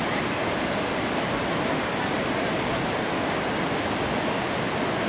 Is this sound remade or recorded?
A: recorded